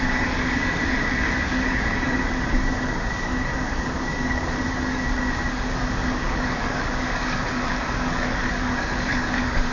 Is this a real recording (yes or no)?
no